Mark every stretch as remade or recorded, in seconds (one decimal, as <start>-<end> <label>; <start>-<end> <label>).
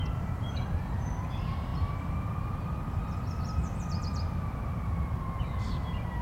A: 0.0-6.2 remade